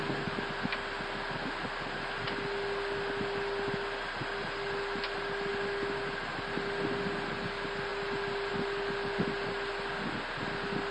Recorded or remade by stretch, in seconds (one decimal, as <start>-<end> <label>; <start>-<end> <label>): 0.0-10.9 recorded